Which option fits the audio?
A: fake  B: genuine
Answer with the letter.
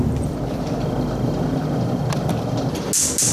B